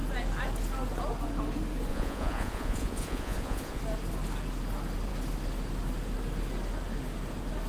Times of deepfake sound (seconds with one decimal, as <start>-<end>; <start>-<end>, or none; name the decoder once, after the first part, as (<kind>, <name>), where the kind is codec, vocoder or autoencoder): 1.9-3.8 (vocoder, Vocos)